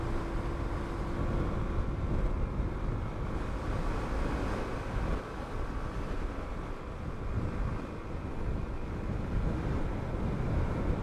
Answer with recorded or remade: recorded